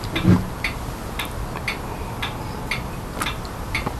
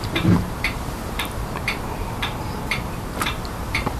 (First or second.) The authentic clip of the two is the first